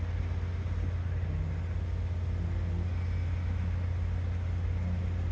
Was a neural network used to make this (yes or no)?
no